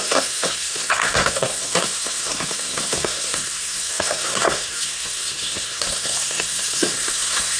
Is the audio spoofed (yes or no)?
yes